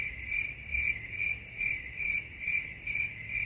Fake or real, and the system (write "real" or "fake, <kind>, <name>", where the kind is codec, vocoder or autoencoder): real